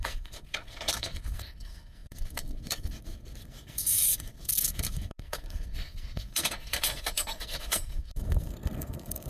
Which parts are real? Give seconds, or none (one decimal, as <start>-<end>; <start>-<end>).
none